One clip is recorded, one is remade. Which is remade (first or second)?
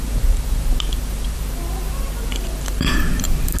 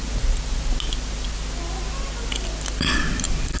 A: first